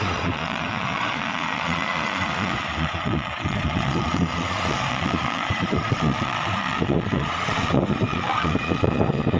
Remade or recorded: remade